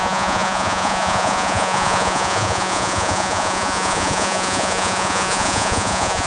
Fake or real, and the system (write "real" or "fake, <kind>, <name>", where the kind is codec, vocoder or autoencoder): fake, vocoder, Vocos